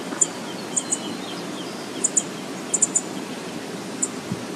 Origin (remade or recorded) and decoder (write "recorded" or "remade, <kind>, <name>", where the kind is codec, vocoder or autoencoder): recorded